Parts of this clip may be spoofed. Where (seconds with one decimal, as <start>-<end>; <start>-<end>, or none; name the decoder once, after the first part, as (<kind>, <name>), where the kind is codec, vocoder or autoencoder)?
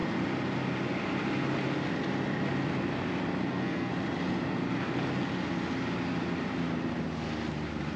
3.5-3.9 (codec, SNAC)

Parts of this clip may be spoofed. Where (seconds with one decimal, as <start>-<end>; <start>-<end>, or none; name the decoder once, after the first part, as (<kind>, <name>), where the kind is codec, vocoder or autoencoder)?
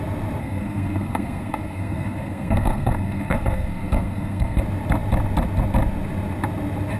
0.4-4.6 (codec, SNAC)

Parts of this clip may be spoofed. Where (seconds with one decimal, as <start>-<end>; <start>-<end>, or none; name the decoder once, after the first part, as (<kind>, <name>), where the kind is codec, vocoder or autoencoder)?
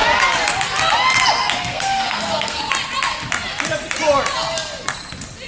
1.7-2.7 (codec, SNAC)